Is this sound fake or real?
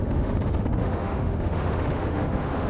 fake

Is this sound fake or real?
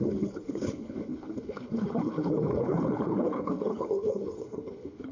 fake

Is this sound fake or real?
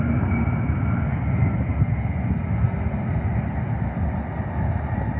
real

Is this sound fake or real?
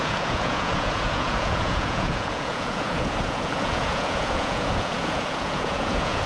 fake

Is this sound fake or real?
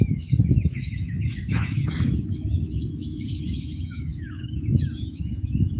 fake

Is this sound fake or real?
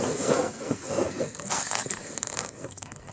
fake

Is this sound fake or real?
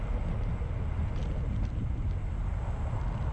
real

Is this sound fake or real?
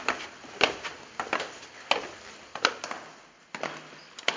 real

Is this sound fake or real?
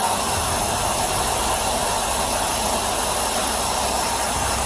real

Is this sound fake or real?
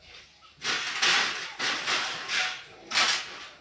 real